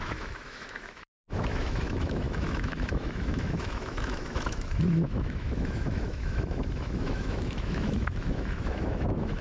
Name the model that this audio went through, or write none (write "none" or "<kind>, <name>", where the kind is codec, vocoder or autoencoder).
autoencoder, DAC-VAE